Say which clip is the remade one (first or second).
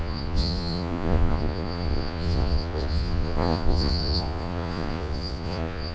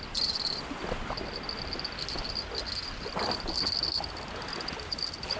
first